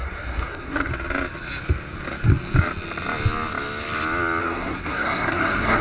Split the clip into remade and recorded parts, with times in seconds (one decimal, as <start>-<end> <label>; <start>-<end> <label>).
0.0-0.9 remade; 0.9-4.4 recorded; 4.4-5.8 remade